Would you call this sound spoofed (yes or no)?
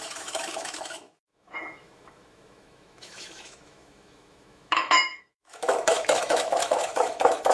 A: yes